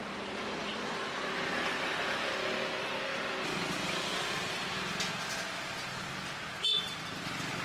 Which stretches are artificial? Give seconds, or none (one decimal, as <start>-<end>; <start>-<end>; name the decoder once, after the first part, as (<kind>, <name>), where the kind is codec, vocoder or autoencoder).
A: none